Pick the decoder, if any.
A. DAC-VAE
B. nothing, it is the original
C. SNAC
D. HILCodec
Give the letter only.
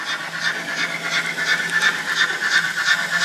B